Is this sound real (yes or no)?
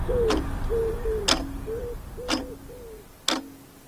yes